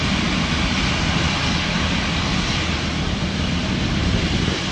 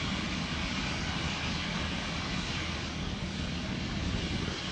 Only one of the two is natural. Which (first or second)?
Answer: first